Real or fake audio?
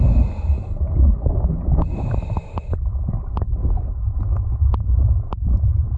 real